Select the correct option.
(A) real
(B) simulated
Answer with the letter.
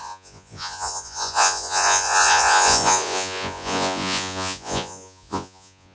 B